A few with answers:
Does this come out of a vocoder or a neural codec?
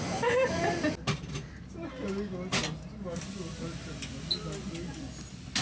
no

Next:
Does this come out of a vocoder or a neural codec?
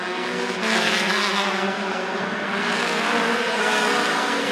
yes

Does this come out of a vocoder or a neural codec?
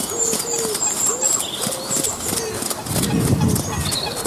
no